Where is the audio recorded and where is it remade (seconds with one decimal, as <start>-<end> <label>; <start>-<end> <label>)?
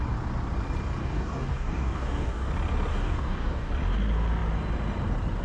0.0-1.0 recorded; 1.0-2.5 remade; 2.5-2.9 recorded; 2.9-3.7 remade; 3.7-5.4 recorded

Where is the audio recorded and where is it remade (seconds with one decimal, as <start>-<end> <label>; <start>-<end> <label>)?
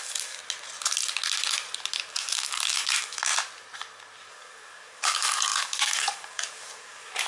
0.0-0.4 remade; 0.4-2.1 recorded; 2.1-3.3 remade; 3.3-4.3 recorded; 4.3-7.3 remade